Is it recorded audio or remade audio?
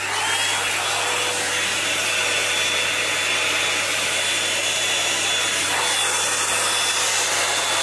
recorded